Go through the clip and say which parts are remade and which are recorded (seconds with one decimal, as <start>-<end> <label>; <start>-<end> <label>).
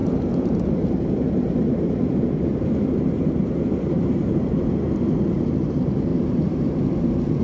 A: 0.0-4.4 remade; 4.4-6.1 recorded; 6.1-6.8 remade; 6.8-7.4 recorded